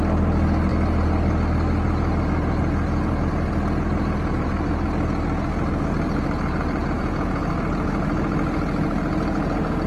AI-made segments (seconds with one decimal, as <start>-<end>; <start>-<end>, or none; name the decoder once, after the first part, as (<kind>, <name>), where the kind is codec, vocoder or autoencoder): 6.8-7.4 (vocoder, Vocos)